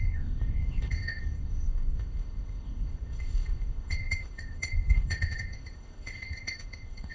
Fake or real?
fake